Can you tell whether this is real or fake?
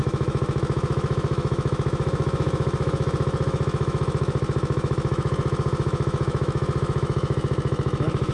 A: fake